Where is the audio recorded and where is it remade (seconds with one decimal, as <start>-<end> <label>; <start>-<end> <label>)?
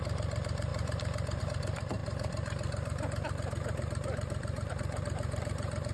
0.0-5.9 remade